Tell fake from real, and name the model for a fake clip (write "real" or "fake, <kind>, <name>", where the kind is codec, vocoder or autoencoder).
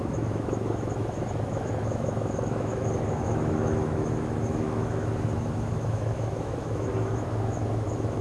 fake, autoencoder, DAC-VAE